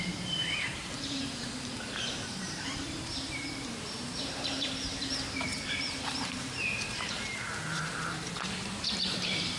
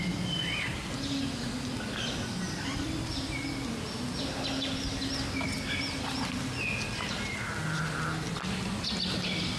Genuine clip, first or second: second